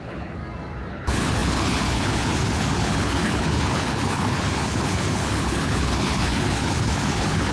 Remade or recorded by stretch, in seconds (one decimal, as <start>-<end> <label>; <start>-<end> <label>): 0.0-0.4 remade; 0.4-0.9 recorded; 0.9-7.5 remade